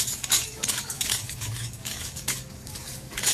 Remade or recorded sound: remade